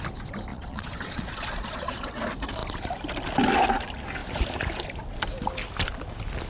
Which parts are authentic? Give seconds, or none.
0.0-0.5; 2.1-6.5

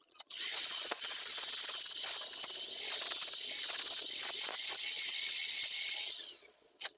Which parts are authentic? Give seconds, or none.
1.3-4.8

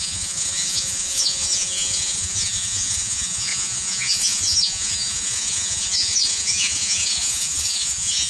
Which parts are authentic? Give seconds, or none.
none

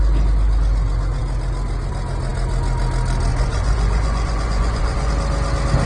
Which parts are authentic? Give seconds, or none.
0.0-3.3; 5.1-5.9

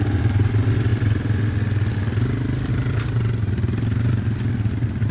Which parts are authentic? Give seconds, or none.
0.0-5.1